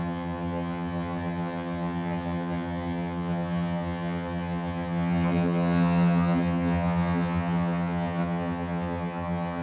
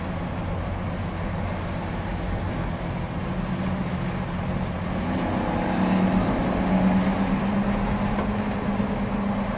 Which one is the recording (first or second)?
second